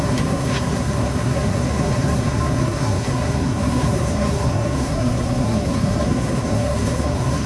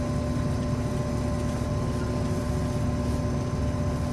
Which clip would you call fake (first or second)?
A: first